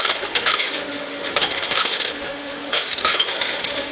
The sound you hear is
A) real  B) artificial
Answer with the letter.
B